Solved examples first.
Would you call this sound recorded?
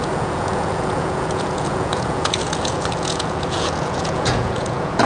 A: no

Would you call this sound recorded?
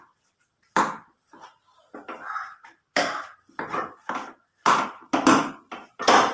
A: yes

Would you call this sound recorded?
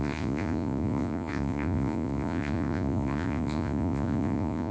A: no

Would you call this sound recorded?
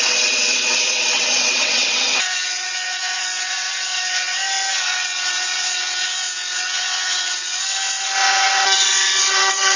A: no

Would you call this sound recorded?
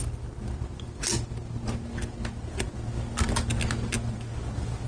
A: yes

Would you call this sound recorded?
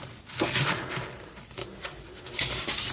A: yes